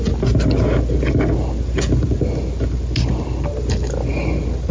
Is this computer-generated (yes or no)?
no